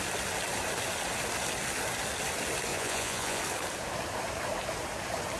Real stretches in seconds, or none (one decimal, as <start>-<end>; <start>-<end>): 0.0-2.7; 3.4-5.4